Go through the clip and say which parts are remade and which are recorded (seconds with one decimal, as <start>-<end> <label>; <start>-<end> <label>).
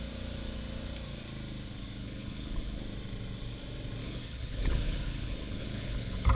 0.0-2.0 recorded; 2.0-2.8 remade; 2.8-4.0 recorded; 4.0-6.3 remade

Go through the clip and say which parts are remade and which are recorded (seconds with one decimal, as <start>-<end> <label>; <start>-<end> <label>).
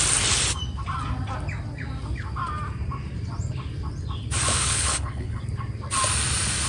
0.0-4.5 recorded; 4.5-5.4 remade; 5.4-6.7 recorded